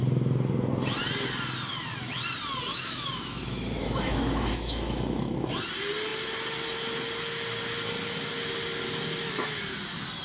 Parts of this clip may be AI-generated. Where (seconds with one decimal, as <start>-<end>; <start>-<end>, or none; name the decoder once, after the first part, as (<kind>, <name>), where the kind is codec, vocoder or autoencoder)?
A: 2.7-5.5 (autoencoder, DAC-VAE)